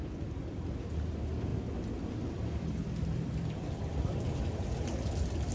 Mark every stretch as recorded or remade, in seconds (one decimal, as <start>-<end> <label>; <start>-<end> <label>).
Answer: 0.0-1.5 remade; 1.5-2.1 recorded; 2.1-5.5 remade